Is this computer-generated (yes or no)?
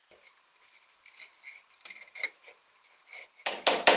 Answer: no